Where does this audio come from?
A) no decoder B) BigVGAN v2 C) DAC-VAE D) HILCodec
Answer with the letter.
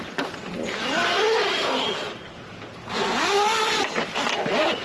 A